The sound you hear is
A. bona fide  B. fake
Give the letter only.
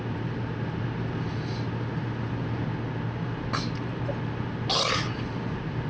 A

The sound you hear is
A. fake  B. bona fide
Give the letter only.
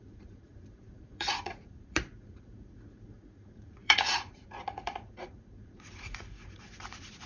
A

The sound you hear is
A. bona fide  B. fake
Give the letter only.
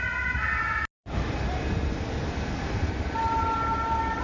A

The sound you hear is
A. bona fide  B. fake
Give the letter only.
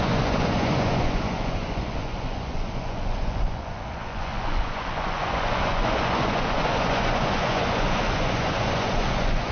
B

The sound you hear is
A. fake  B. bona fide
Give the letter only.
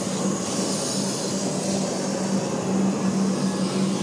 B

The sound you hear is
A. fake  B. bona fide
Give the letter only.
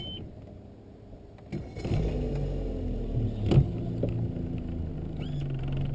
B